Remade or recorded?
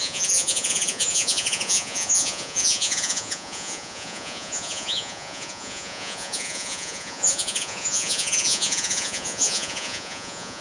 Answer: remade